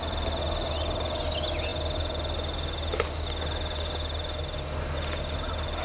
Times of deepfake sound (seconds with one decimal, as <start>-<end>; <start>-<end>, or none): none